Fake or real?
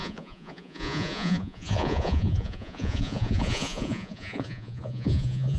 fake